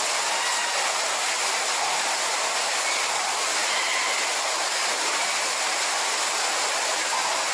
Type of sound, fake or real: real